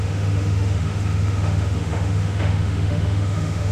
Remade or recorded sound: remade